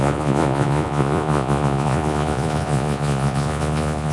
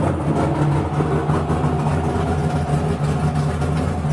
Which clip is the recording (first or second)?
second